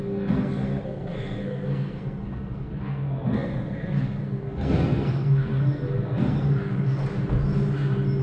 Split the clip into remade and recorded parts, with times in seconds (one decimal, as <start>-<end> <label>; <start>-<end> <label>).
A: 0.0-7.0 remade; 7.0-8.2 recorded